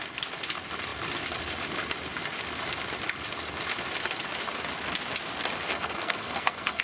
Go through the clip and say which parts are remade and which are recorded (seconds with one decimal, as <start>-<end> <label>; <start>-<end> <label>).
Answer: 0.0-5.7 recorded; 5.7-6.8 remade